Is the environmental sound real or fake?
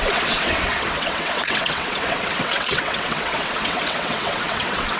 fake